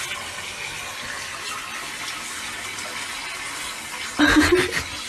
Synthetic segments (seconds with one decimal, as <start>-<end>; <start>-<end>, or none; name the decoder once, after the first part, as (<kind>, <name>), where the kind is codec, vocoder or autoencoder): none